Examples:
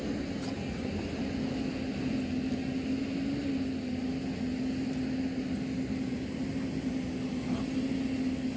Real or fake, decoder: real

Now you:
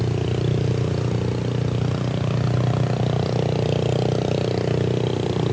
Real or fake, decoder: real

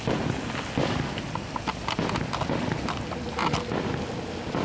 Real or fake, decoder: real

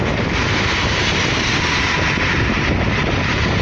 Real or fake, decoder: real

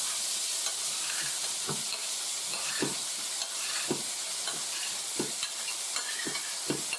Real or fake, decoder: real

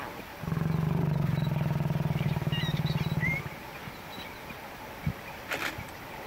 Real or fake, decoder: real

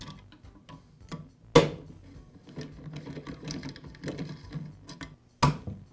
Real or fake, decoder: real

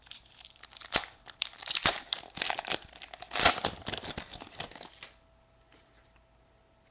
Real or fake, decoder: real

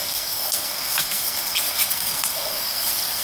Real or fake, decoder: fake, codec, SNAC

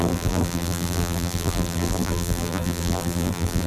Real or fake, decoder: fake, vocoder, BigVGAN v2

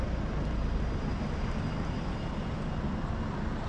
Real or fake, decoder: real